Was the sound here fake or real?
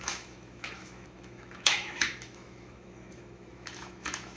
fake